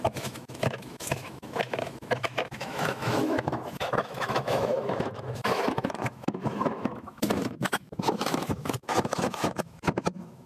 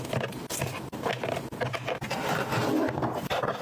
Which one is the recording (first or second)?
second